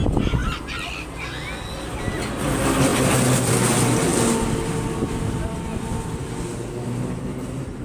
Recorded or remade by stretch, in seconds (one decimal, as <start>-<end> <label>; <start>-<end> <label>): 0.0-2.9 recorded; 2.9-3.5 remade; 3.5-7.8 recorded